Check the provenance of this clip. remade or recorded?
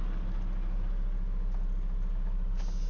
recorded